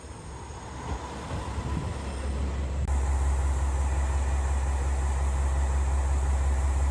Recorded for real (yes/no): yes